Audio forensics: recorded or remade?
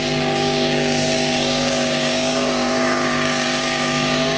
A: remade